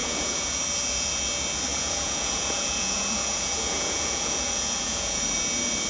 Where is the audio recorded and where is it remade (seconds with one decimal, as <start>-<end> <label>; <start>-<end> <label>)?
0.0-0.6 remade; 0.6-1.7 recorded; 1.7-5.2 remade; 5.2-5.9 recorded